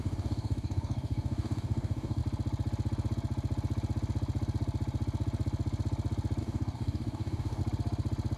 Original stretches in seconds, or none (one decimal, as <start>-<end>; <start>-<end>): 2.2-6.4; 7.6-8.4